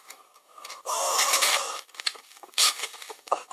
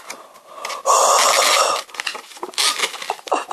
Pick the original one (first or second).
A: second